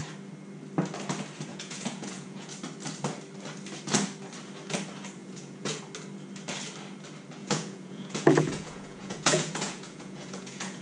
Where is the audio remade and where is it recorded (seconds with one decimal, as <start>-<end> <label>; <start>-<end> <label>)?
0.0-1.5 recorded; 1.5-2.5 remade; 2.5-5.2 recorded; 5.2-5.8 remade; 5.8-7.4 recorded; 7.4-10.8 remade